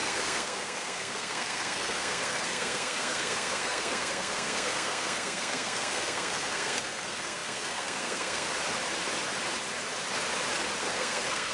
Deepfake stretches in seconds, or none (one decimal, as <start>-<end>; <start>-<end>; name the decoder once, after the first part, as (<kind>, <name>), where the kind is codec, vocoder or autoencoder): 0.0-8.5 (codec, SNAC); 10.8-11.5

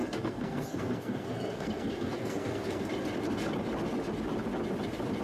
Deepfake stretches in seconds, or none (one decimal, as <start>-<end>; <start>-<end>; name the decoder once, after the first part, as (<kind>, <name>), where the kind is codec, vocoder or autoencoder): 0.0-2.9 (codec, SNAC)

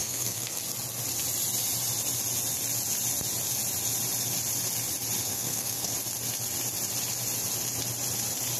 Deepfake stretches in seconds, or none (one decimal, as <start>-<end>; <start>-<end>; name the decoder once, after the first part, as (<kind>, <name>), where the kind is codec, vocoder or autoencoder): 0.0-0.6 (codec, SNAC); 5.3-5.9

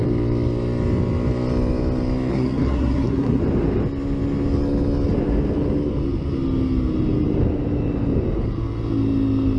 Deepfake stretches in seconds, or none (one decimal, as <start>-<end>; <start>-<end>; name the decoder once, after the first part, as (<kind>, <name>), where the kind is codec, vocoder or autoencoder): 2.3-3.4 (codec, SNAC)

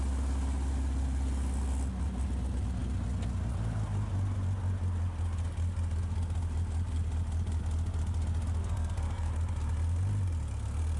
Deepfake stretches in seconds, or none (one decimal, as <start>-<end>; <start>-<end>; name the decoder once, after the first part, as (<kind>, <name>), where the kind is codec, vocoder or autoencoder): 8.6-9.3 (codec, SNAC)

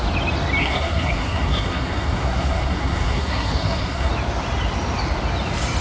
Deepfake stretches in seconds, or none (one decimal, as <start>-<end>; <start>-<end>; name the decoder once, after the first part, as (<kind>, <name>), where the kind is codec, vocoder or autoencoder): 0.6-4.1 (codec, SNAC)